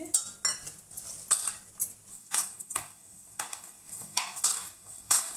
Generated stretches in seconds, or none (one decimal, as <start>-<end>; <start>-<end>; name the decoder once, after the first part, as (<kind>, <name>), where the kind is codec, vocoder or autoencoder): 2.1-5.4 (codec, DAC)